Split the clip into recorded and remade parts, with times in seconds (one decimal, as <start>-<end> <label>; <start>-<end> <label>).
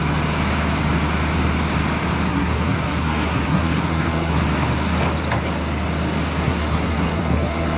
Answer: 0.0-2.3 recorded; 2.3-4.4 remade; 4.4-6.4 recorded; 6.4-7.8 remade